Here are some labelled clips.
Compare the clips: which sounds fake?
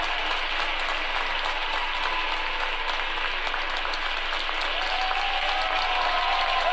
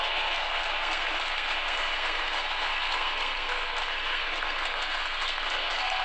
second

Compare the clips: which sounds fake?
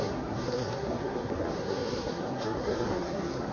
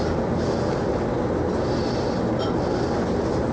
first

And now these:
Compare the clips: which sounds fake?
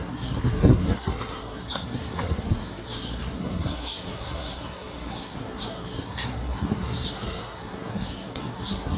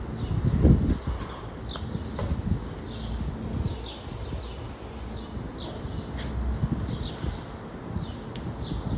first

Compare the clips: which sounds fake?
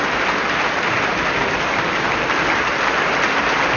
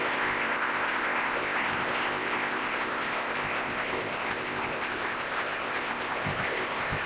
second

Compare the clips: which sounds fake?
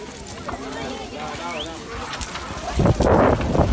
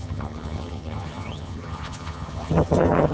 second